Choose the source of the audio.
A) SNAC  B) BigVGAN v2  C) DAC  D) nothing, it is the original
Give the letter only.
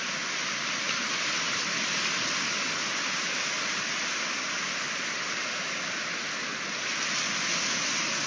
D